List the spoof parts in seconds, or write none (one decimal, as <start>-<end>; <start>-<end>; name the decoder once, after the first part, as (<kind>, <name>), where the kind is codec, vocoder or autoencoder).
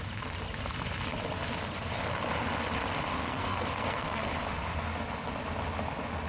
3.2-4.3 (codec, SNAC)